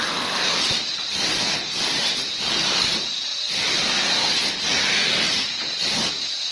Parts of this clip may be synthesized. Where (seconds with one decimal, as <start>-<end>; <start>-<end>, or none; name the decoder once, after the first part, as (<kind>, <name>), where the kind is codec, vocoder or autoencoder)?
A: none